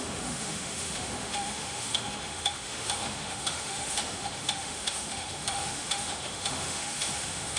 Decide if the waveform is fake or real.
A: fake